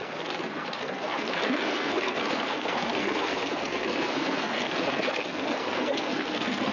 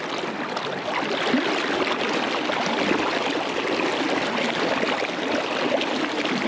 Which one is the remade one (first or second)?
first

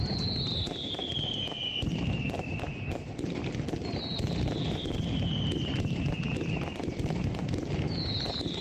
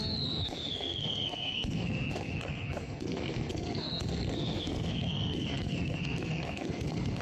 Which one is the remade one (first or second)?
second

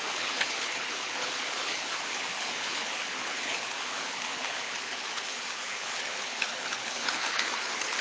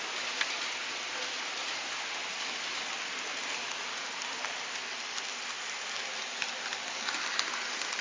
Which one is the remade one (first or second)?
first